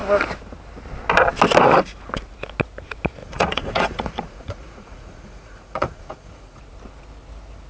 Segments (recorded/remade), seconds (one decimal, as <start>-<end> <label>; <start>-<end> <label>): 0.0-3.2 recorded; 3.2-6.6 remade; 6.6-7.7 recorded

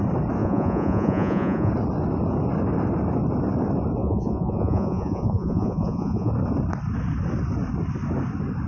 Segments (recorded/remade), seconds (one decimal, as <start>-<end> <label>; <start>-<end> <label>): 0.0-0.4 recorded; 0.4-1.7 remade; 1.7-4.0 recorded; 4.0-6.3 remade; 6.3-8.7 recorded

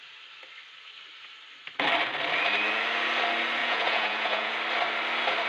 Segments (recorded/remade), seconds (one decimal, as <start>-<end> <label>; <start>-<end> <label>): 0.0-3.6 recorded; 3.6-4.5 remade; 4.5-5.5 recorded

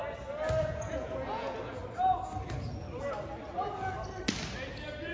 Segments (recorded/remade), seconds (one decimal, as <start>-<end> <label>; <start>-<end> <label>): 0.0-0.6 recorded; 0.6-1.8 remade; 1.8-5.1 recorded

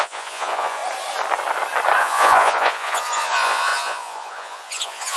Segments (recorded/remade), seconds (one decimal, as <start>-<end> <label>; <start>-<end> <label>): 0.0-0.8 remade; 0.8-2.0 recorded; 2.0-5.2 remade

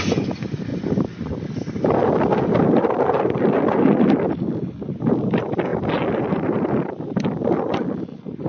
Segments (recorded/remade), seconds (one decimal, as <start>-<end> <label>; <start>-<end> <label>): 0.0-8.5 recorded

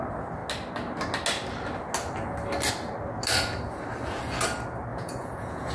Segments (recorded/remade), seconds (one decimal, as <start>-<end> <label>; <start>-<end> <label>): 0.0-4.9 recorded; 4.9-5.7 remade